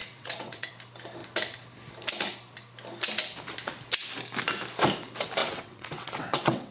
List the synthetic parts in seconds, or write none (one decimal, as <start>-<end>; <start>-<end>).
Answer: 0.0-0.7; 5.4-6.7